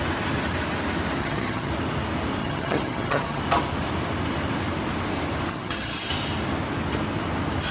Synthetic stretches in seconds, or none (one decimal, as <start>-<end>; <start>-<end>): 1.2-1.7; 2.4-3.4; 5.5-6.1